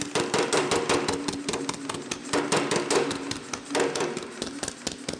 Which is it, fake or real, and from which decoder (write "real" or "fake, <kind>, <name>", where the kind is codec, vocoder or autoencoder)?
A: real